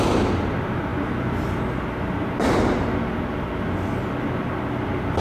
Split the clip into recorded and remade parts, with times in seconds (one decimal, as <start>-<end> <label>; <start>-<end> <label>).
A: 0.0-5.2 recorded